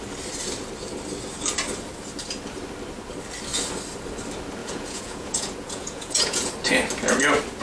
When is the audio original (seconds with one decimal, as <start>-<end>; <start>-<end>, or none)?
0.0-4.6; 6.5-7.6